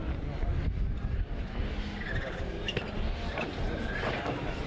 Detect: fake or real real